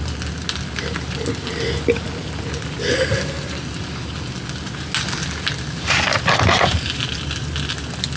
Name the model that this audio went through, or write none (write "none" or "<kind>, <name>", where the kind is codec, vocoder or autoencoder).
none